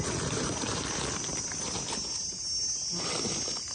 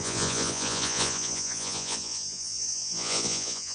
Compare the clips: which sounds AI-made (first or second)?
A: second